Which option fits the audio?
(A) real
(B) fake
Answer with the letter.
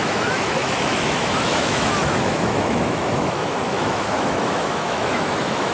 B